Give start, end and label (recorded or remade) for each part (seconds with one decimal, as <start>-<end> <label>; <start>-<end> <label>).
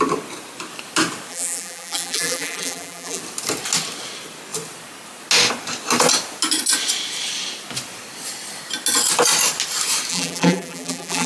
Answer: 0.0-1.3 recorded; 1.3-3.2 remade; 3.2-10.1 recorded; 10.1-11.3 remade